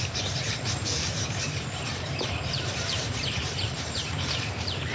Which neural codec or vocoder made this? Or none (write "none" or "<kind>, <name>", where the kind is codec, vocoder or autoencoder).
vocoder, BigVGAN v2